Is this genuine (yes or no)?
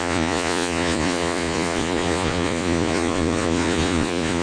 no